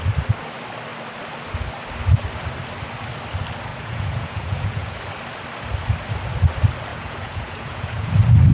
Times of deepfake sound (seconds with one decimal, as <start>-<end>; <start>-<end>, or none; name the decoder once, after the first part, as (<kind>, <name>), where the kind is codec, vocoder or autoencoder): 3.7-5.0 (vocoder, Vocos); 6.9-8.1